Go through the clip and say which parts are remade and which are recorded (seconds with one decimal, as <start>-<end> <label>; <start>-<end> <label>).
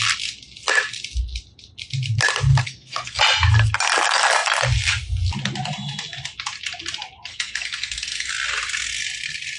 0.0-2.5 recorded; 2.5-3.2 remade; 3.2-7.3 recorded; 7.3-8.3 remade; 8.3-9.6 recorded